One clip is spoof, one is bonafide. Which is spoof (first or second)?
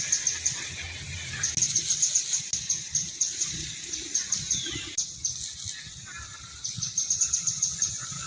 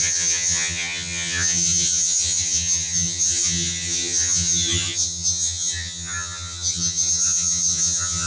second